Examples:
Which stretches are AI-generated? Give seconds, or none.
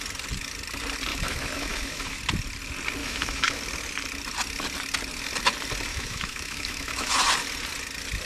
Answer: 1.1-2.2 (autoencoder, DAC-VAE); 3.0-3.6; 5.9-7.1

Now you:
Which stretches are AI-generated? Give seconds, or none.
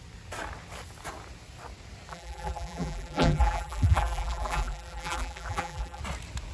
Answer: 2.1-6.0 (vocoder, BigVGAN v2)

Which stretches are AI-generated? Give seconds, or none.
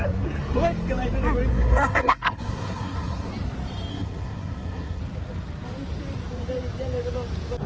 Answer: 1.5-3.3 (codec, SNAC); 3.9-5.0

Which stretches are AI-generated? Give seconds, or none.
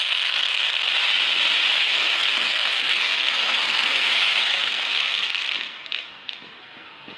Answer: 0.0-0.9 (codec, SNAC); 1.8-7.2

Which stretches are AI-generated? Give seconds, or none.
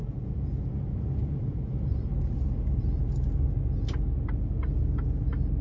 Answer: 0.0-0.7 (vocoder, Vocos); 1.2-2.0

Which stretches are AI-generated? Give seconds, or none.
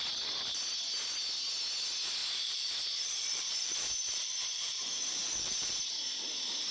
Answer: 2.2-5.9 (vocoder, BigVGAN v2)